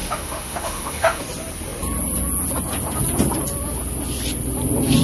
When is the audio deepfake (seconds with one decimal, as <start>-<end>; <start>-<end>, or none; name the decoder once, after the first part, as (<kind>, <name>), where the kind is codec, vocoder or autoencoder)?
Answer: 0.0-1.2 (autoencoder, DAC-VAE)

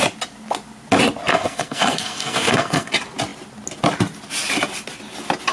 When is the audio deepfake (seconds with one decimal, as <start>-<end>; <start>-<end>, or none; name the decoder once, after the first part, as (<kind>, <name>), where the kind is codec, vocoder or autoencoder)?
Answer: 1.3-2.9 (codec, SNAC)

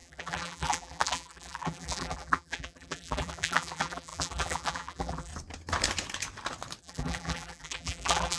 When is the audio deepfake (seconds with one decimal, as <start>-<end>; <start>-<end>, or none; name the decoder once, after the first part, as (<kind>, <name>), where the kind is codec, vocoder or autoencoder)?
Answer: 0.0-5.3 (vocoder, BigVGAN v2); 6.8-8.4

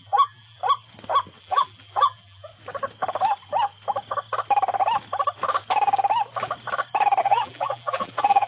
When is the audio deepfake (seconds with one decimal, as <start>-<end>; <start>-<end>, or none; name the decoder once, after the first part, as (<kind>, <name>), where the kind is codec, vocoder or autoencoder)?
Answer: 0.0-0.6 (vocoder, BigVGAN v2); 1.4-2.5; 7.2-8.5

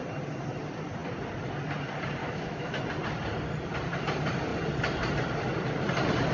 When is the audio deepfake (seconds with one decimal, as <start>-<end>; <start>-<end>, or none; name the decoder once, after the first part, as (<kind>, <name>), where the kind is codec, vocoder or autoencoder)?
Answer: 2.2-2.8 (autoencoder, DAC-VAE)

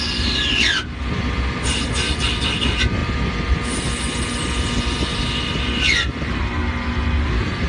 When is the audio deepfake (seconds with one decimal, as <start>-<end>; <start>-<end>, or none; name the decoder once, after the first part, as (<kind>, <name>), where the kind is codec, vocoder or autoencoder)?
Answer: none

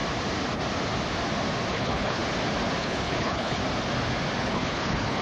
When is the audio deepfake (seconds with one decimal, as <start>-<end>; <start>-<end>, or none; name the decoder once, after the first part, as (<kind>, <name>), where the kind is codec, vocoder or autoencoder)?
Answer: 1.7-2.2 (codec, HILCodec); 2.8-3.6; 4.4-5.2

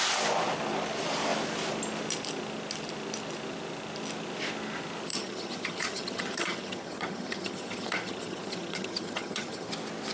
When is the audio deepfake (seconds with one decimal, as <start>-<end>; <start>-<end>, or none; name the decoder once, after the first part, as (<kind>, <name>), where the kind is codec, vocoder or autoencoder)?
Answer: 5.1-9.7 (vocoder, HiFi-GAN)